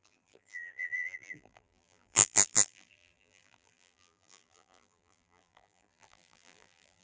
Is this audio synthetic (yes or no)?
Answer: yes